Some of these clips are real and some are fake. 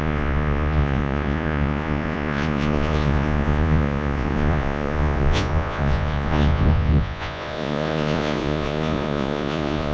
fake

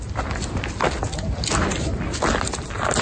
real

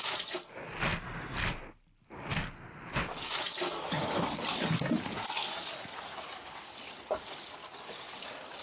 real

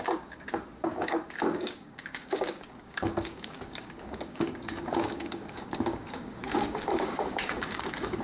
fake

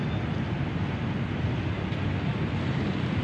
real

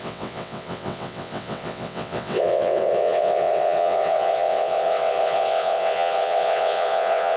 fake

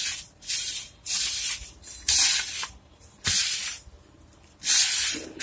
real